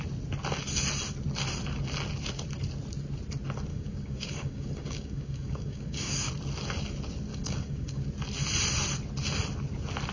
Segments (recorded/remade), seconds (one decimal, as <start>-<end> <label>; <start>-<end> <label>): 0.0-3.7 recorded; 3.7-6.3 remade; 6.3-7.3 recorded; 7.3-8.0 remade; 8.0-10.1 recorded